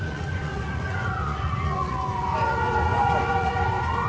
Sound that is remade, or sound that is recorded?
remade